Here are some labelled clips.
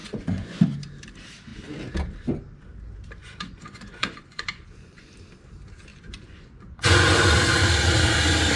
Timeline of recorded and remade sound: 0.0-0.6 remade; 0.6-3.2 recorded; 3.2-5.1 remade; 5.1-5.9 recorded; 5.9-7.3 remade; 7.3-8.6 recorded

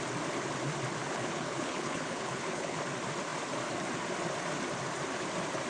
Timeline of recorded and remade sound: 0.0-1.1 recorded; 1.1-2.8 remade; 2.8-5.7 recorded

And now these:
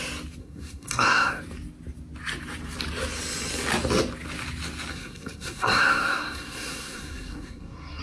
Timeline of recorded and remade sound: 0.0-0.4 recorded; 0.4-1.4 remade; 1.4-4.9 recorded; 4.9-8.0 remade

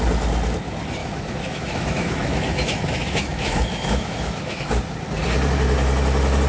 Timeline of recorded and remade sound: 0.0-1.0 recorded; 1.0-4.8 remade; 4.8-6.5 recorded

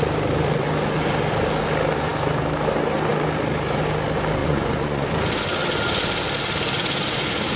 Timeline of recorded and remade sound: 0.0-4.4 recorded; 4.4-5.1 remade; 5.1-7.6 recorded

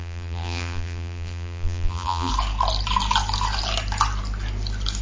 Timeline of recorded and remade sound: 0.0-2.3 remade; 2.3-5.0 recorded

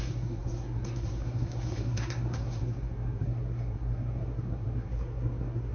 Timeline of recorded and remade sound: 0.0-5.7 remade

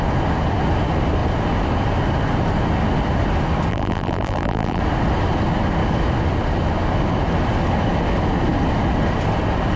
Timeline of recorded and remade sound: 0.0-3.7 recorded; 3.7-4.8 remade; 4.8-9.8 recorded